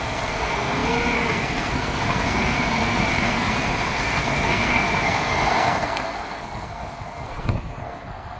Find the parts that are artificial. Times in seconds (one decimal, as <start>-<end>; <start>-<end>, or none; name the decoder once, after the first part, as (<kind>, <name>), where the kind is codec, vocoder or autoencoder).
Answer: 0.0-8.4 (codec, SNAC)